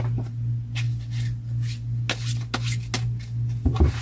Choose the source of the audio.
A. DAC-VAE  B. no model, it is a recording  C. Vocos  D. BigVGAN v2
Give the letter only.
B